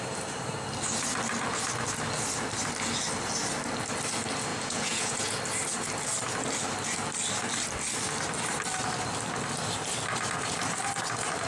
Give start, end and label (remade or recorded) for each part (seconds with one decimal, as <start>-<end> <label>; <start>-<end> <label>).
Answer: 0.0-4.5 recorded; 4.5-5.4 remade; 5.4-11.5 recorded

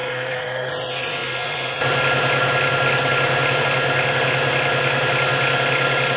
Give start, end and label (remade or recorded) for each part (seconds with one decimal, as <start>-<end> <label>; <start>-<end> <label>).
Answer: 0.0-0.7 remade; 0.7-6.2 recorded

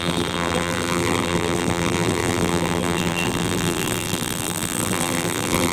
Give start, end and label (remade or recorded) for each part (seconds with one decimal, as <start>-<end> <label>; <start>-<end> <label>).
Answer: 0.0-5.7 remade

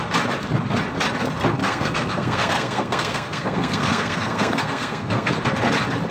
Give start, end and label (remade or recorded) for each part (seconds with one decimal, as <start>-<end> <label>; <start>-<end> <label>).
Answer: 0.0-1.6 recorded; 1.6-5.3 remade; 5.3-6.1 recorded

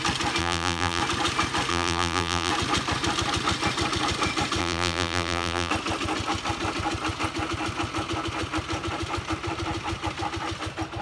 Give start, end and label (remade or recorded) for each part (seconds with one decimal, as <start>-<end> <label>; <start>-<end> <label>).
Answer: 0.0-0.4 recorded; 0.4-1.0 remade; 1.0-1.7 recorded; 1.7-2.5 remade; 2.5-4.6 recorded; 4.6-5.7 remade; 5.7-11.0 recorded

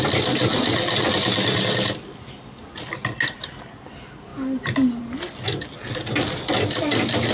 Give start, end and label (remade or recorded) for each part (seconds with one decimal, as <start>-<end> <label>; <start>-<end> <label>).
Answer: 0.0-7.3 recorded

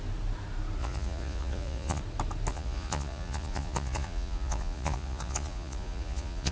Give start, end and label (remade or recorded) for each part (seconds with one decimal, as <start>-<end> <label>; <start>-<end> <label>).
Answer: 0.0-0.8 recorded; 0.8-2.0 remade; 2.0-2.5 recorded; 2.5-6.5 remade

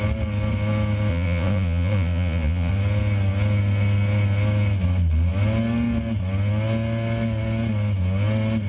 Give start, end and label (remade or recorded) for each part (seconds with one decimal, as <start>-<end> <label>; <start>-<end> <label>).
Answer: 0.0-1.1 recorded; 1.1-2.7 remade; 2.7-8.7 recorded